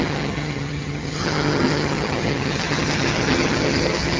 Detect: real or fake fake